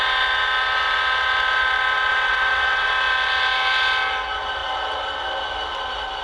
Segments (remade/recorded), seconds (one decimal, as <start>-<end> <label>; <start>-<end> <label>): 0.0-2.1 recorded; 2.1-2.9 remade; 2.9-6.2 recorded